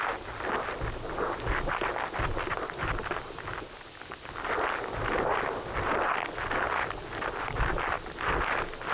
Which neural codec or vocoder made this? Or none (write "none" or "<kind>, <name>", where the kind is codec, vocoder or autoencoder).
none